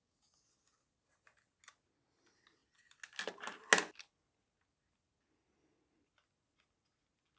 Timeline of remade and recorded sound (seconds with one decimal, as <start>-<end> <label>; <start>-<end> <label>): 0.0-7.4 recorded